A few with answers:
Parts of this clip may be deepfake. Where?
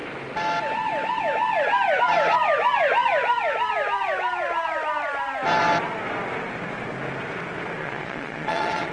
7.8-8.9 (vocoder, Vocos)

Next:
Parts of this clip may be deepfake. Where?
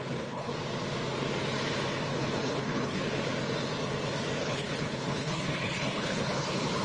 0.0-0.5 (codec, HILCodec); 2.2-3.0; 4.4-6.8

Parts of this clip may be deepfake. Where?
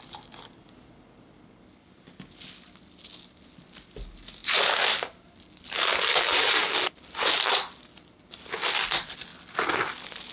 none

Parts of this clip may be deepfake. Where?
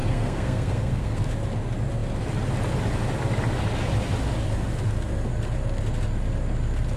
0.0-1.2 (codec, SNAC)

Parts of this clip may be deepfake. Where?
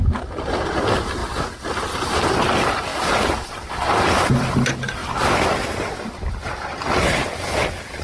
none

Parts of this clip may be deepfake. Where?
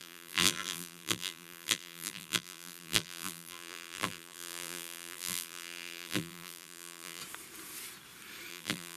0.0-7.2 (vocoder, BigVGAN v2); 8.5-9.0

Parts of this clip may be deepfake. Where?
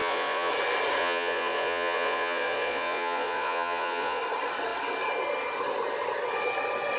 0.0-0.5 (vocoder, Vocos); 1.0-4.2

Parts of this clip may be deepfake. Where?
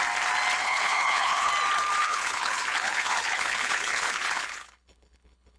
0.6-1.5 (codec, HILCodec); 2.0-5.6